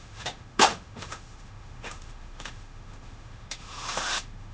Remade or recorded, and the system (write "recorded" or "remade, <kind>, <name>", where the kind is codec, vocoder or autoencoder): remade, autoencoder, DAC-VAE